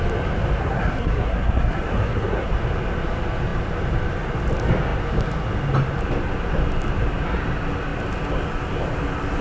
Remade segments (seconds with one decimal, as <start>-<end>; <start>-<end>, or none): 0.6-2.5